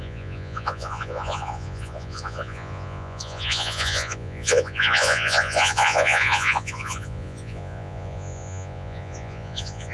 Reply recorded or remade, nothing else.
remade